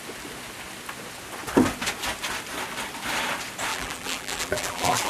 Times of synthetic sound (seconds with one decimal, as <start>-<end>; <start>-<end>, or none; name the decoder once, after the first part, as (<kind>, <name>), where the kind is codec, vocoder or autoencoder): 3.7-5.1 (vocoder, BigVGAN v2)